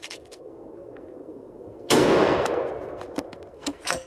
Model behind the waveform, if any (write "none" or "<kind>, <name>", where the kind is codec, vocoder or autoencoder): codec, SNAC